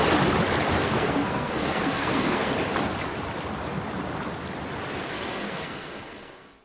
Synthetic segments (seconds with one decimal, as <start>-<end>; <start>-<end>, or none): 0.8-2.5; 5.0-6.6